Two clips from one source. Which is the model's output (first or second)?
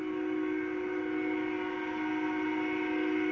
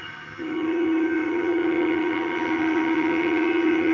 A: second